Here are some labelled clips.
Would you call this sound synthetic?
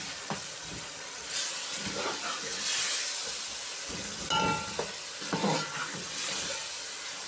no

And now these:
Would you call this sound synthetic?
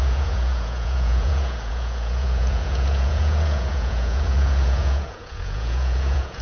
yes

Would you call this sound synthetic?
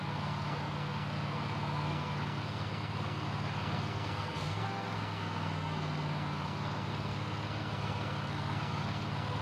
yes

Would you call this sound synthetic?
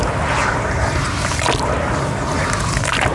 no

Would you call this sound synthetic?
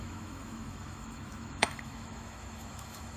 yes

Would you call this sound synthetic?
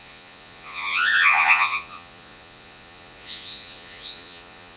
yes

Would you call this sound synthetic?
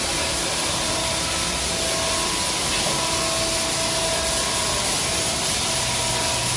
no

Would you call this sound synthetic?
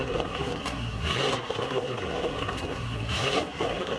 yes